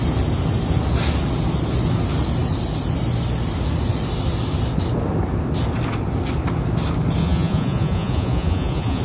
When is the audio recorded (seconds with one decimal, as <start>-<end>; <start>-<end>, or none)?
0.0-7.2